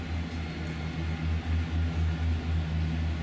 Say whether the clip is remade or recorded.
recorded